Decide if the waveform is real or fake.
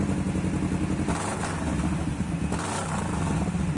real